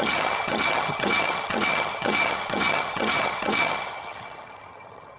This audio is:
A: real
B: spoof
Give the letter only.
B